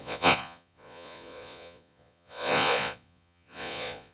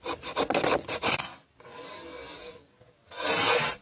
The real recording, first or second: second